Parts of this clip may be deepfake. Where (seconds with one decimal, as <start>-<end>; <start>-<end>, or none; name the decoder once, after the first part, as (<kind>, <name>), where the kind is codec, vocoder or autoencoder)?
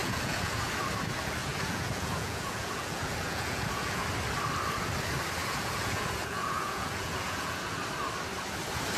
0.0-0.7 (vocoder, Vocos); 1.4-4.0; 5.4-7.8